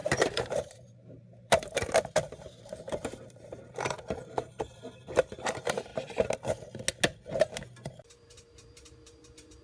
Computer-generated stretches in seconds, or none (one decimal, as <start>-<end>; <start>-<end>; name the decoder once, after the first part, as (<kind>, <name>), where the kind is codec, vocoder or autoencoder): 0.0-5.9 (vocoder, BigVGAN v2); 7.3-9.6